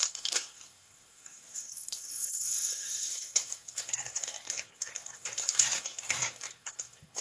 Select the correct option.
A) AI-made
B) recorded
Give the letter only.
A